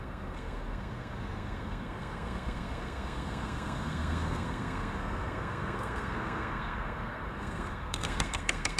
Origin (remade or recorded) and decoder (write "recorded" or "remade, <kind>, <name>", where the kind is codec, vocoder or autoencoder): remade, codec, SNAC